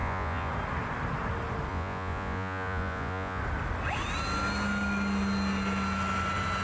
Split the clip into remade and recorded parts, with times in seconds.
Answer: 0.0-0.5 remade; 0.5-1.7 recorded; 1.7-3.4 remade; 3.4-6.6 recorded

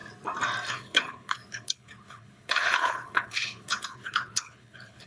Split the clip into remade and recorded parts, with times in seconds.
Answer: 0.0-0.7 recorded; 0.7-5.1 remade